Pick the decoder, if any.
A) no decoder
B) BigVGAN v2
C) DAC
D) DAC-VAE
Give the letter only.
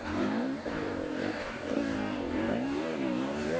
C